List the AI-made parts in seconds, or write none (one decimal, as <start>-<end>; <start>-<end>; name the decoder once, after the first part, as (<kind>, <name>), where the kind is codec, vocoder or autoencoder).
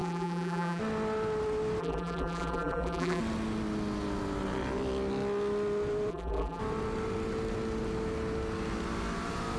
0.0-0.8 (vocoder, BigVGAN v2); 1.8-3.2; 6.1-6.6